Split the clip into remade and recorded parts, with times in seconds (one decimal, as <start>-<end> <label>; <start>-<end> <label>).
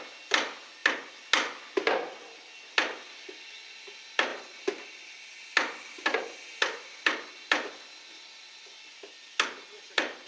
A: 0.0-10.3 recorded